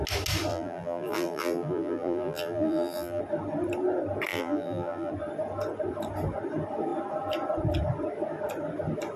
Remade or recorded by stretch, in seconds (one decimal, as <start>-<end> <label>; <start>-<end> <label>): 0.0-0.5 recorded; 0.5-3.2 remade; 3.2-4.3 recorded; 4.3-5.1 remade; 5.1-9.2 recorded